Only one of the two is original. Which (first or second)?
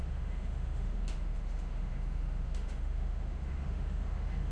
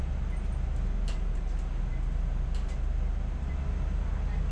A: second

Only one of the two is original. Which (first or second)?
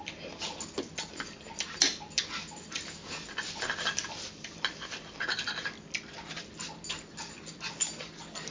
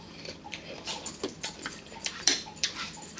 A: first